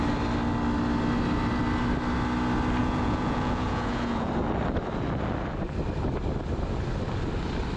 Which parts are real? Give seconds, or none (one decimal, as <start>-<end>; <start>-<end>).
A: 0.0-2.8; 4.3-7.8

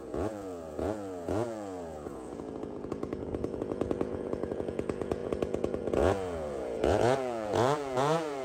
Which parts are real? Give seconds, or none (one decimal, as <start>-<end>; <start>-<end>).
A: none

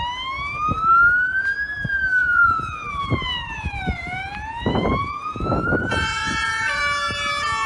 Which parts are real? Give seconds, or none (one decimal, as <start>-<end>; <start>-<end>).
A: 0.0-2.2; 6.8-7.7

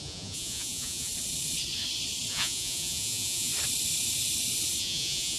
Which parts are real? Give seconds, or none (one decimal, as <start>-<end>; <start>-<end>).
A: 1.1-2.3; 3.5-4.8